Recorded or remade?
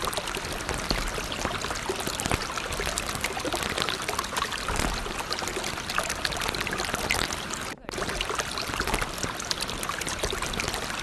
remade